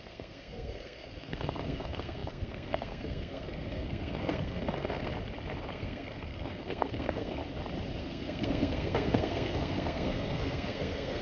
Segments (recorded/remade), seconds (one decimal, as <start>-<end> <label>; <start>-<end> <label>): 0.0-5.1 remade; 5.1-5.7 recorded; 5.7-7.4 remade; 7.4-8.0 recorded; 8.0-11.2 remade